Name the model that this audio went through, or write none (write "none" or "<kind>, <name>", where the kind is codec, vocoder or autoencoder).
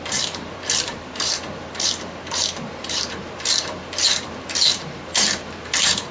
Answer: vocoder, BigVGAN v2